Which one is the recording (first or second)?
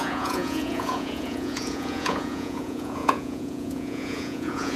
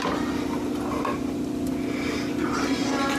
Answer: second